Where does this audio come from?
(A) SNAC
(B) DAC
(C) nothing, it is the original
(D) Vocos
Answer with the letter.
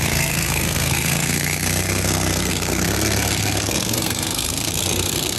A